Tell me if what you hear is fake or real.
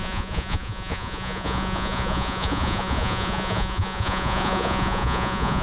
fake